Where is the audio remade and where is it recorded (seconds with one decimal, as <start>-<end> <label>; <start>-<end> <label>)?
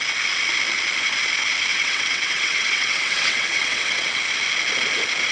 0.0-1.7 recorded; 1.7-4.2 remade; 4.2-5.3 recorded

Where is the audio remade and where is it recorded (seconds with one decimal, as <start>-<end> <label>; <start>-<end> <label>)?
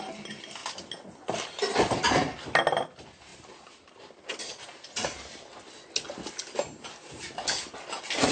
0.0-8.3 recorded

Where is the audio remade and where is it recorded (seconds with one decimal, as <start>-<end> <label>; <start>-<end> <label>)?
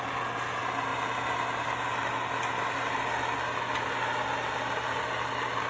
0.0-5.7 recorded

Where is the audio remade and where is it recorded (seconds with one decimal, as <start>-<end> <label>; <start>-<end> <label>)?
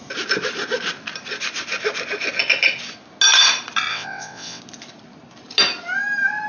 0.0-3.9 recorded; 3.9-4.6 remade; 4.6-6.5 recorded